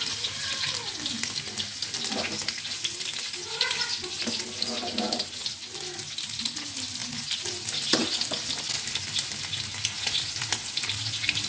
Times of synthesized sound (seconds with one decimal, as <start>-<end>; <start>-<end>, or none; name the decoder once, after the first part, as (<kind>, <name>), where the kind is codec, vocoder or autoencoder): none